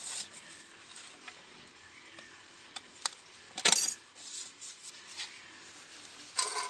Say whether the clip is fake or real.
real